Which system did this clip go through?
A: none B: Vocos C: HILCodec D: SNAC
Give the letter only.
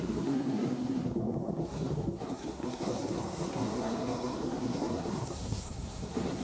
D